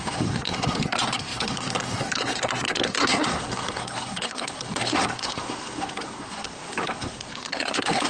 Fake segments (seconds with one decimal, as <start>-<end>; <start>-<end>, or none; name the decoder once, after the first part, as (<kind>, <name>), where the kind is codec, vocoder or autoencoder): 0.0-8.1 (codec, SNAC)